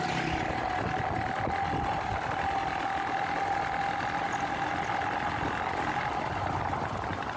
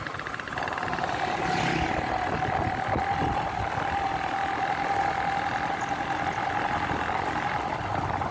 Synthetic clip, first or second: second